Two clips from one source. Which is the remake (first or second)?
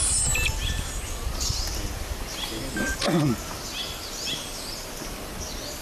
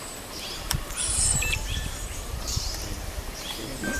second